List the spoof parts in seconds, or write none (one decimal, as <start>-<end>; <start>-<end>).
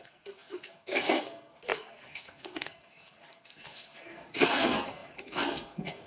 0.0-6.1